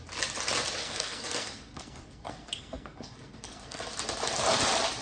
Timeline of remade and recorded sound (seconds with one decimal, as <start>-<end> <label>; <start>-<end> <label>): 0.0-0.8 recorded; 0.8-3.8 remade; 3.8-5.0 recorded